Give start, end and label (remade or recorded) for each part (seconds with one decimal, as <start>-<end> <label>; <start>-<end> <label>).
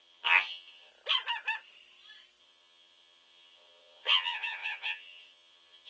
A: 0.0-0.9 remade; 0.9-2.4 recorded; 2.4-5.9 remade